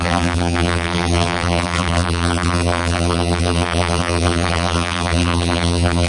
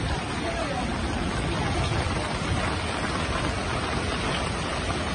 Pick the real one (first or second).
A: second